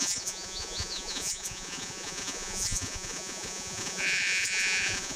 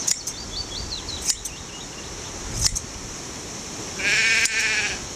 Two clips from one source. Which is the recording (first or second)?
second